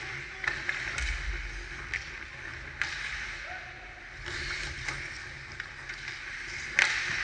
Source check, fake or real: real